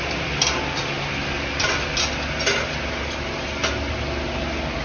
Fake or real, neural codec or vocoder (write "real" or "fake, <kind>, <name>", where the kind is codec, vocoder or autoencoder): real